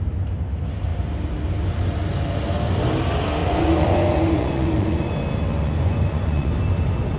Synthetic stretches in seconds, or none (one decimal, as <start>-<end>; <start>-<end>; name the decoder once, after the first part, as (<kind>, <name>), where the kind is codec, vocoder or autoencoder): 3.4-5.1 (vocoder, Vocos); 5.5-6.5